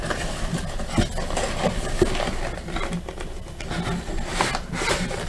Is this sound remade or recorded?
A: recorded